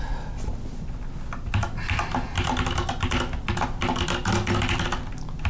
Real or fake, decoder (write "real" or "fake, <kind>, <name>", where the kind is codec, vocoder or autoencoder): real